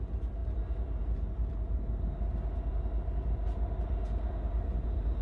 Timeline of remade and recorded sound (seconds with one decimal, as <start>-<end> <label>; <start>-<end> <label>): 0.0-5.2 recorded